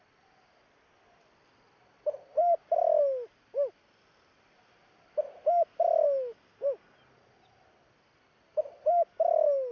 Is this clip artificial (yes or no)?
no